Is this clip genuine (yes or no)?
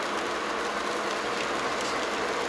yes